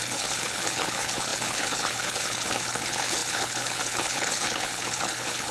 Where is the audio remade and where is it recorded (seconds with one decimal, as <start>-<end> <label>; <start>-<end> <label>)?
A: 0.0-5.5 remade